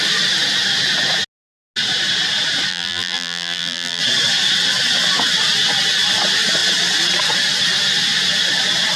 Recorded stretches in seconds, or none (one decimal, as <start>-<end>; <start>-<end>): 0.0-2.7; 4.0-9.0